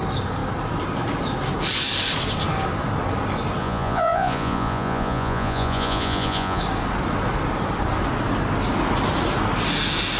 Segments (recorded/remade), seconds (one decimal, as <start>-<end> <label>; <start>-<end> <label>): 0.0-3.6 recorded; 3.6-6.6 remade; 6.6-10.2 recorded